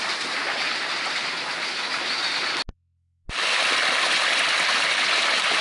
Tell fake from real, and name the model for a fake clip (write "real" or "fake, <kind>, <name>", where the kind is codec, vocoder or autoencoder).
real